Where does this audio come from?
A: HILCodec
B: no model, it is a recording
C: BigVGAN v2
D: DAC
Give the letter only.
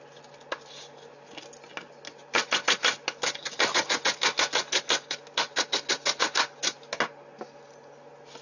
B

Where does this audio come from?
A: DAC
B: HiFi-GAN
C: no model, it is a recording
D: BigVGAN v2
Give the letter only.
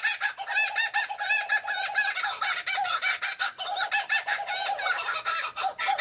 C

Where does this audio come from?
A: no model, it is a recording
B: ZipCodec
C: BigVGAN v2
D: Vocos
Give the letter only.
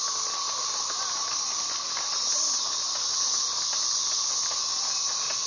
A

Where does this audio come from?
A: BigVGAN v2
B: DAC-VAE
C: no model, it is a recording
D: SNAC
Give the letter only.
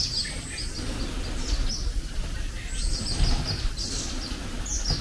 C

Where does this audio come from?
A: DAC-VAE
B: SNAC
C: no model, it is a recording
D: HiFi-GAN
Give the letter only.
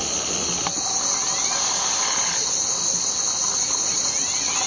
C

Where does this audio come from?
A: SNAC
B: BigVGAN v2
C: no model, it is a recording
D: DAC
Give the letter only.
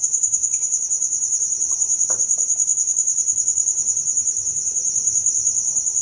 B